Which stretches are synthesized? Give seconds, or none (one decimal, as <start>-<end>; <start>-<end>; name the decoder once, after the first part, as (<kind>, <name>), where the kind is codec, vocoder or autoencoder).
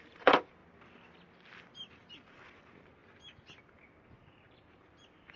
0.0-0.6 (vocoder, BigVGAN v2); 2.1-3.0; 3.7-5.4